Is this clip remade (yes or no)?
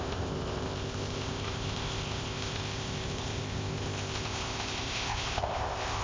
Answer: yes